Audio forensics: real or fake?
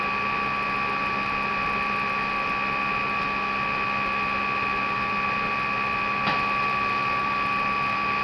real